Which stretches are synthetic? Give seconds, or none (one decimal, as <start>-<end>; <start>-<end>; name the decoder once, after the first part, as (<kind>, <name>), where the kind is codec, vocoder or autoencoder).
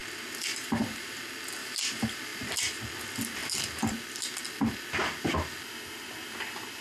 0.5-1.2 (vocoder, BigVGAN v2); 1.6-2.5